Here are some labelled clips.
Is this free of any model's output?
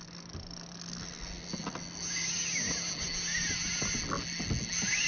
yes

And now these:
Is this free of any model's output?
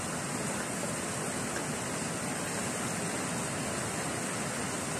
yes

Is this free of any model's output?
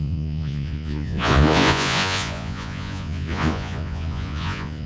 no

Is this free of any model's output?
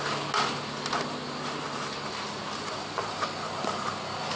yes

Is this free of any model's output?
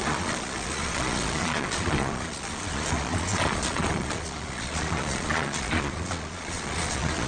no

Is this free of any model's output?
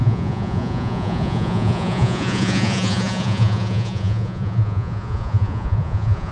no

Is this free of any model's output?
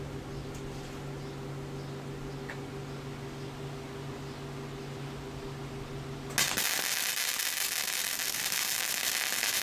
yes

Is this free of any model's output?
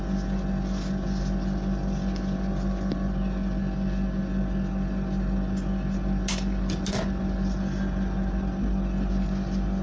yes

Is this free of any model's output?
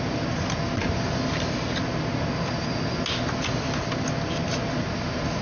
yes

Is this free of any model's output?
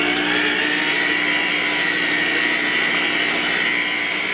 yes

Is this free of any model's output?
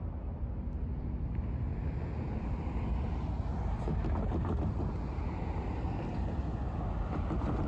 yes